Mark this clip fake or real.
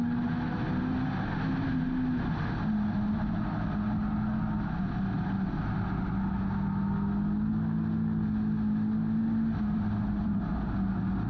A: real